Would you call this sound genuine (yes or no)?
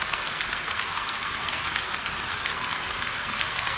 no